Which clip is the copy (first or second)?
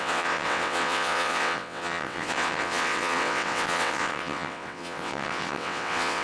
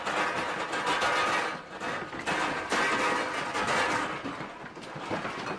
first